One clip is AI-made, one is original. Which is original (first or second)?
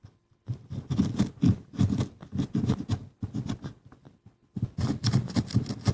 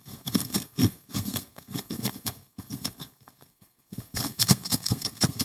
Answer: first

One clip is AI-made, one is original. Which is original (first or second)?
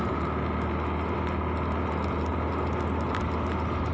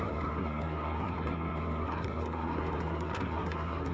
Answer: first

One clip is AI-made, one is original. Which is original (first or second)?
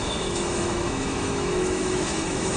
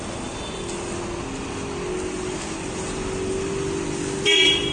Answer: second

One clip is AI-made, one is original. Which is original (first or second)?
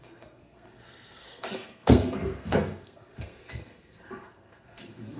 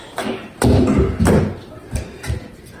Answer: second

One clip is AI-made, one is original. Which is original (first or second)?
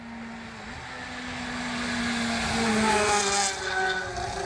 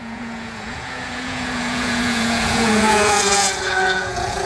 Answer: first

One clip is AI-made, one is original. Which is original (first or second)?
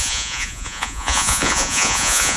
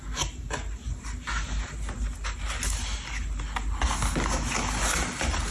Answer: second